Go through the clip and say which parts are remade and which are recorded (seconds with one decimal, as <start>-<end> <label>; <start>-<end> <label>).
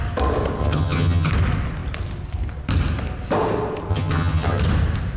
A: 0.0-0.6 recorded; 0.6-1.3 remade; 1.3-3.9 recorded; 3.9-4.6 remade; 4.6-5.2 recorded